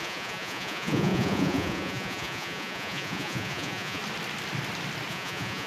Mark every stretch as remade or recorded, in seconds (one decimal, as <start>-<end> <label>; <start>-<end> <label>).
0.0-4.0 remade; 4.0-5.1 recorded; 5.1-5.7 remade